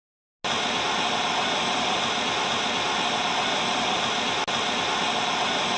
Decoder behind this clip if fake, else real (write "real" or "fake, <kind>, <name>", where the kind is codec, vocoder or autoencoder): real